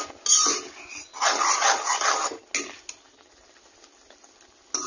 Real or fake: real